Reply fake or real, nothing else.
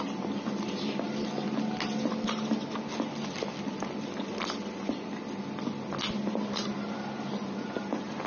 real